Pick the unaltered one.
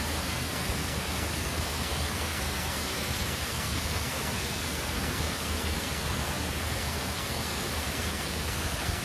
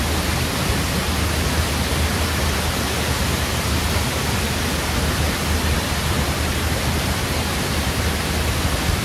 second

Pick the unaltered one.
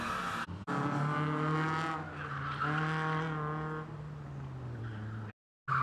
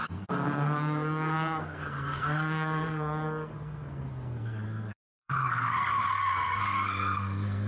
first